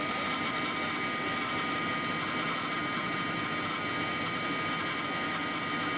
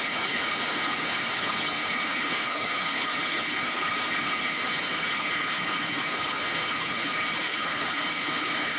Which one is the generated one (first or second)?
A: second